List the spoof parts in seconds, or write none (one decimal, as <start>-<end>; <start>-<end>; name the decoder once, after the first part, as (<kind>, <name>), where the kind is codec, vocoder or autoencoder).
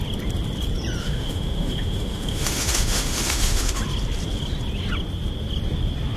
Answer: 1.0-3.8 (autoencoder, DAC-VAE)